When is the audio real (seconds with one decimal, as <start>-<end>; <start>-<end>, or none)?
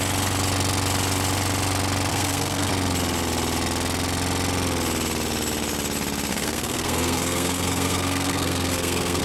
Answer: 0.0-2.1; 2.7-6.3